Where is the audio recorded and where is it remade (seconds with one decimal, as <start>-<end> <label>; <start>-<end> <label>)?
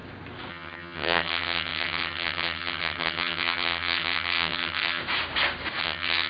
0.0-0.5 recorded; 0.5-5.0 remade; 5.0-5.8 recorded; 5.8-6.3 remade